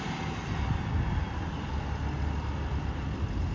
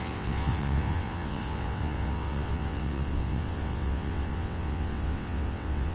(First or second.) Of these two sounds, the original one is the first